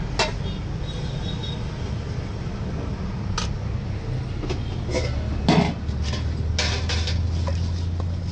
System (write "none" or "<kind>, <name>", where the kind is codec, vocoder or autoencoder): none